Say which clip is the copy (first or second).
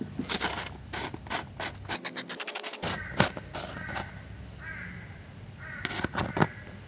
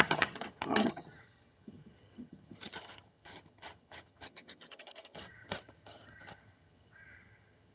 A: second